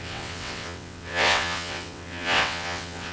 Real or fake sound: fake